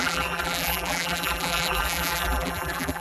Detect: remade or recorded remade